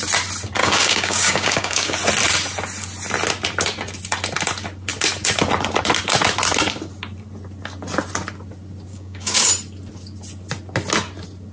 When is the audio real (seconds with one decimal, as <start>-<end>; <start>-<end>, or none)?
0.0-0.6; 2.0-8.9; 9.5-11.5

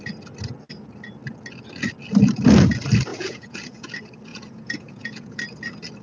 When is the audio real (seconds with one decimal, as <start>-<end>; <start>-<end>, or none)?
0.0-3.1; 3.9-4.3; 5.4-6.0

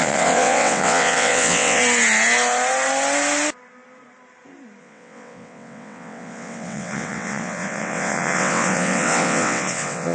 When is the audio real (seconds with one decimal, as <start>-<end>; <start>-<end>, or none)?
1.8-4.8

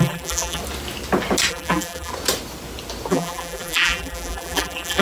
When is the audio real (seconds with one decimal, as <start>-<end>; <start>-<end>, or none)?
0.6-1.5; 2.1-3.1

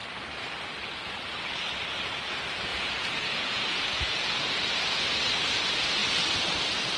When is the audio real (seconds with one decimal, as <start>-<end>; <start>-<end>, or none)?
0.0-2.7; 5.0-7.0

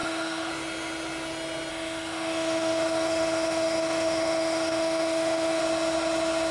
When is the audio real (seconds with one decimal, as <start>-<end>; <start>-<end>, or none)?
0.5-1.7; 5.6-6.5